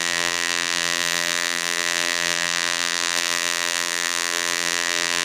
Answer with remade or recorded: remade